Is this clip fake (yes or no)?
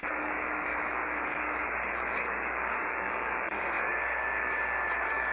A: yes